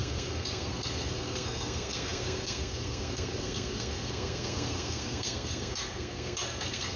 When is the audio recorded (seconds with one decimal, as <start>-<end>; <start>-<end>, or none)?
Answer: none